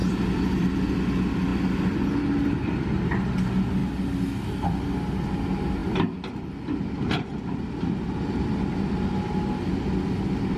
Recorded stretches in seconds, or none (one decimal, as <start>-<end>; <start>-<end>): 0.7-10.6